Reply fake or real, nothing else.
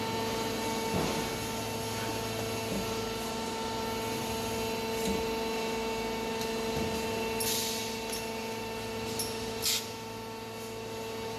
real